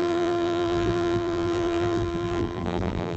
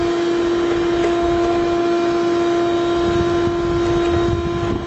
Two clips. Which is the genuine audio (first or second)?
second